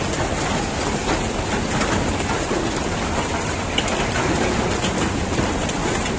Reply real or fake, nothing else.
real